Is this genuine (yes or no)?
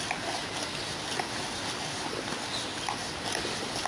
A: yes